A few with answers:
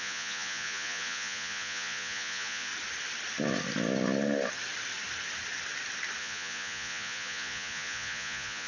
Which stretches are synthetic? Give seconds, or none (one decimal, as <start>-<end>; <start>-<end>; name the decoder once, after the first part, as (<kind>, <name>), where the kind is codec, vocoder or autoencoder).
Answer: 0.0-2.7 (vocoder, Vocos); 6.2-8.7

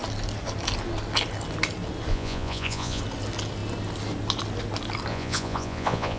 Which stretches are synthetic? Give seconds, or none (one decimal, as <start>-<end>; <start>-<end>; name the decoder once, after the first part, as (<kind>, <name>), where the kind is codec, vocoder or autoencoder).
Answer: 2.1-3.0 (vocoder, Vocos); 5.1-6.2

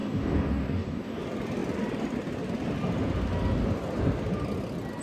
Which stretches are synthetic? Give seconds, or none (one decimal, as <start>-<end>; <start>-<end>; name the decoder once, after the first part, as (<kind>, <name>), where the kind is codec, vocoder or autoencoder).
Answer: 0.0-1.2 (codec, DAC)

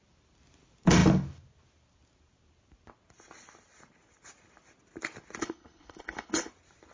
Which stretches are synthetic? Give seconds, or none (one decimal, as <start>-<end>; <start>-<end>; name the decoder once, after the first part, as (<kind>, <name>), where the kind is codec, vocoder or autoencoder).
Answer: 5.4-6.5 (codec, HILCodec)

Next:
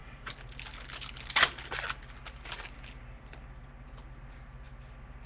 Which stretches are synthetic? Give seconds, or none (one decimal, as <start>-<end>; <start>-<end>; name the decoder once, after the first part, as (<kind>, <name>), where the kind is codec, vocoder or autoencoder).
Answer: none

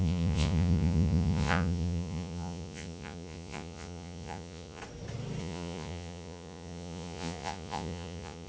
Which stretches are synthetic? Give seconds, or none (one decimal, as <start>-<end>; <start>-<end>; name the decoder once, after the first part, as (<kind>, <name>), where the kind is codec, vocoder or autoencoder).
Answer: 0.0-4.8 (vocoder, Vocos); 5.4-8.5

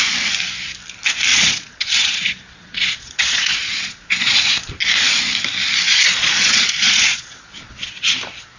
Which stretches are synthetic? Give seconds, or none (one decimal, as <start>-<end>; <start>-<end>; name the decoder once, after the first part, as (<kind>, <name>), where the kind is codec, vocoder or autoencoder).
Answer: 1.3-4.5 (vocoder, Vocos); 5.9-8.1

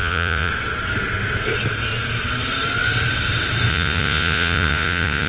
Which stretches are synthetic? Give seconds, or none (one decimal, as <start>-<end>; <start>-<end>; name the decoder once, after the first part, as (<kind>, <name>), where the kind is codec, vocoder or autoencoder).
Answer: 0.0-0.5 (vocoder, Vocos); 3.7-5.3